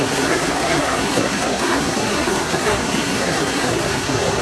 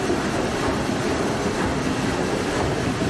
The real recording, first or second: second